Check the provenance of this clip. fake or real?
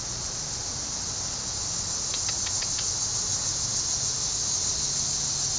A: real